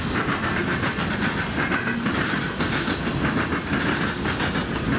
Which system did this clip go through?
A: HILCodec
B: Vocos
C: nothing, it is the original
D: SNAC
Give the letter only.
C